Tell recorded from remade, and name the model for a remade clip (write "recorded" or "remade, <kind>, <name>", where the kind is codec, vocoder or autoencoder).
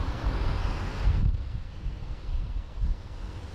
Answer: remade, codec, SNAC